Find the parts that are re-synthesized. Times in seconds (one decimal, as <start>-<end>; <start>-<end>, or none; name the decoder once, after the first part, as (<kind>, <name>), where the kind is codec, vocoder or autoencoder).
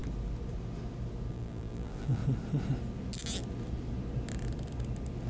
1.3-2.2 (vocoder, BigVGAN v2)